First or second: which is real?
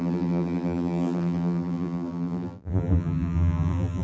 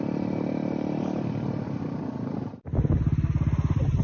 second